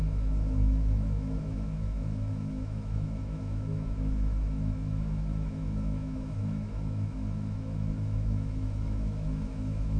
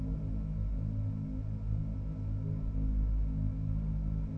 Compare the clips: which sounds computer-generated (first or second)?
first